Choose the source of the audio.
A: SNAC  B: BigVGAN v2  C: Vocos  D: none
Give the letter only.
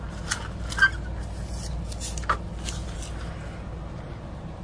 D